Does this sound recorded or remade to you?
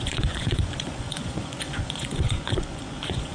remade